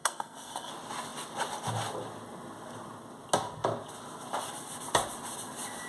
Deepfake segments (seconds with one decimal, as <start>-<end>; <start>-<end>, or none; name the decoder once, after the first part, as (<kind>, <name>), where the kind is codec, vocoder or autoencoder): 0.0-0.7 (codec, SNAC)